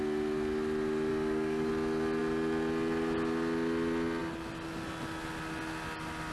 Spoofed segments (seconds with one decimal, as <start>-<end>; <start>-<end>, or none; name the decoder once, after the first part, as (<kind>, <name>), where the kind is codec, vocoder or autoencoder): 1.1-1.7 (codec, DAC)